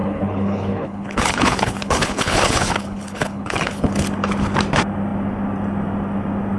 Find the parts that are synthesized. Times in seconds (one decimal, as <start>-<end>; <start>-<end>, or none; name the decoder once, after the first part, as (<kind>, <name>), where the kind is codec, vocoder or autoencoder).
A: 0.0-4.0 (codec, HILCodec)